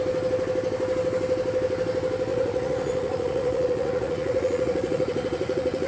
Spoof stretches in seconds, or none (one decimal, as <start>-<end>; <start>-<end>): 2.3-5.9